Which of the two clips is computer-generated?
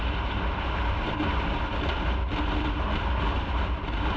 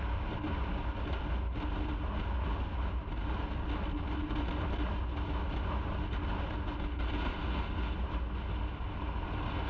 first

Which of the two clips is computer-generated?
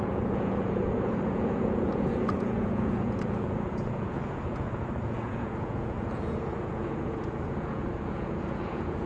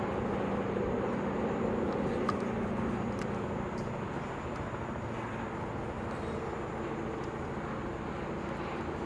first